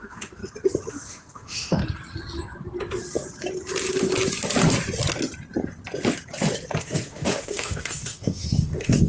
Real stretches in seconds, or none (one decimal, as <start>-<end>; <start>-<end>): 0.4-0.9; 1.8-6.8